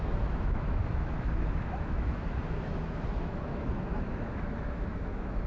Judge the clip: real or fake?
fake